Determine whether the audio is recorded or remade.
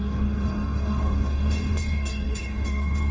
remade